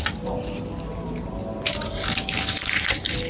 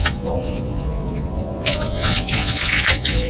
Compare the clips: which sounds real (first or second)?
first